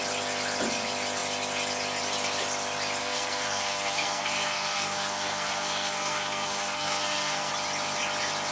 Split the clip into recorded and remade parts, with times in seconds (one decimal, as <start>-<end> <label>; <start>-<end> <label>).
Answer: 0.0-3.0 recorded; 3.0-7.5 remade; 7.5-8.5 recorded